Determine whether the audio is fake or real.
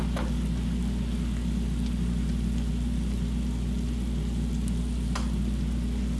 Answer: real